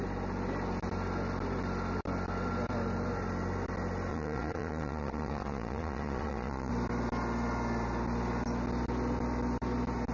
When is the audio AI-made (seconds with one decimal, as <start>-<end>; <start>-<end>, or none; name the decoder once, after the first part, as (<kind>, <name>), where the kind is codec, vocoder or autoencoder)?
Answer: 4.1-6.7 (vocoder, Vocos)